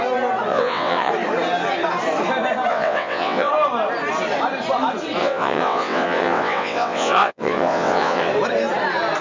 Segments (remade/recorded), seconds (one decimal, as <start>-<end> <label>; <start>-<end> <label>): 0.0-0.5 recorded; 0.5-1.1 remade; 1.1-2.7 recorded; 2.7-3.5 remade; 3.5-5.2 recorded; 5.2-8.3 remade; 8.3-9.2 recorded